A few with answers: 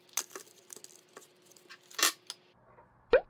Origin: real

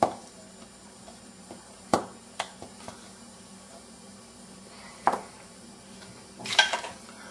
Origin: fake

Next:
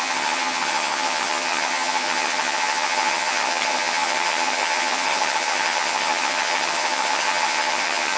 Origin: fake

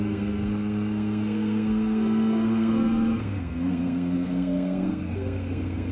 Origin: fake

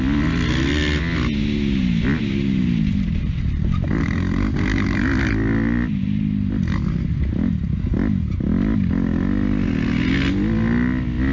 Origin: real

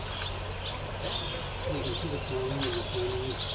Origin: real